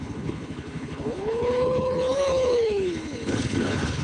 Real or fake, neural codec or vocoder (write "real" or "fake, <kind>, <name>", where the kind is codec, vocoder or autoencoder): fake, codec, HILCodec